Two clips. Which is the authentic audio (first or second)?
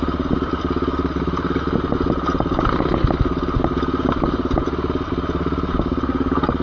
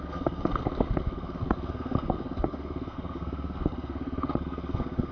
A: first